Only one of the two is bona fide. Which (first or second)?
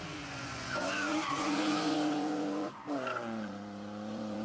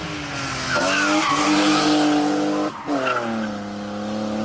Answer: second